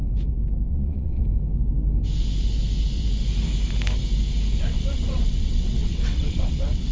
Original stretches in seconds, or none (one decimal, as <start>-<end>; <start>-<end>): 0.0-0.7; 1.2-4.6